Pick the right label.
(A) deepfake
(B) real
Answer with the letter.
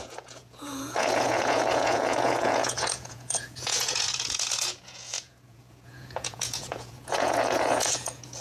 A